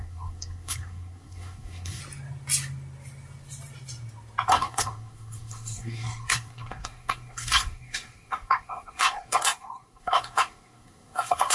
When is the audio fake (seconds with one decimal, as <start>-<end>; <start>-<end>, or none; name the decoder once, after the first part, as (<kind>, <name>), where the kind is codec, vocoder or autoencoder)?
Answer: 0.0-2.0 (codec, SNAC); 4.5-11.5